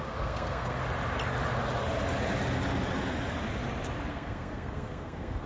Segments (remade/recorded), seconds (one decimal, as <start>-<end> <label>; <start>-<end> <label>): 0.0-0.8 remade; 0.8-4.1 recorded; 4.1-5.5 remade